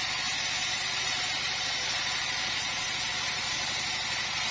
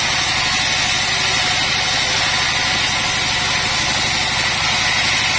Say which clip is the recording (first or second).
second